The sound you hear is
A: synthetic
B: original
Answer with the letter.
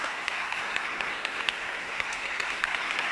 A